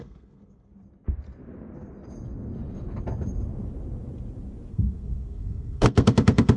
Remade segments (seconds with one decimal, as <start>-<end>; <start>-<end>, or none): 0.0-0.7; 4.7-6.6